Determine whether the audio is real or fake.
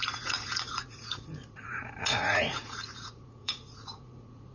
fake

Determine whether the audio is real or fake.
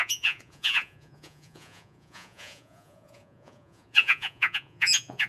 fake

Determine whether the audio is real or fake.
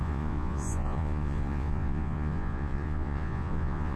fake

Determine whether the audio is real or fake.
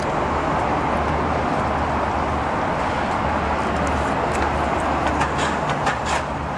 real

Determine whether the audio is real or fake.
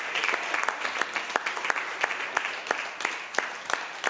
real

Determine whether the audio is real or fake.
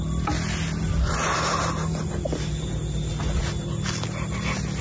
real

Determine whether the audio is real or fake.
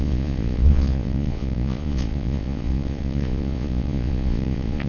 fake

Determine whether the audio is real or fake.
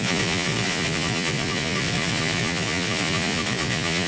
fake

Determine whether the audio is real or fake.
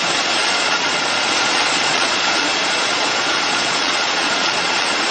fake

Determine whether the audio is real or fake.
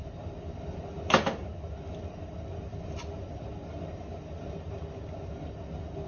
real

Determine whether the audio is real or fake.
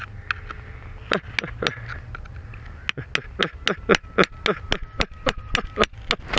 real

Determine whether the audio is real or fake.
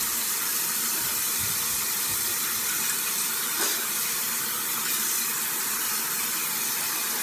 real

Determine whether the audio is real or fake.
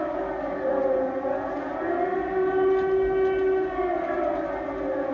real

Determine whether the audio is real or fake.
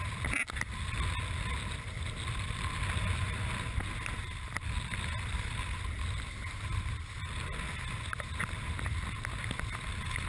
real